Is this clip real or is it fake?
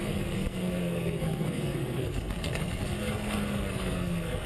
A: fake